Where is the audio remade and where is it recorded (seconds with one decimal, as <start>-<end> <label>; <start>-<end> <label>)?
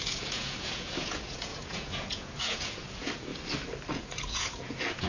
0.0-3.3 remade; 3.3-3.9 recorded; 3.9-5.1 remade